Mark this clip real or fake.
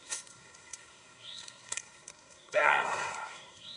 fake